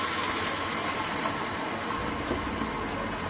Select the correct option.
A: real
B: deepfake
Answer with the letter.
A